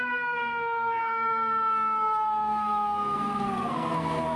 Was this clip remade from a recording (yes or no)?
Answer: yes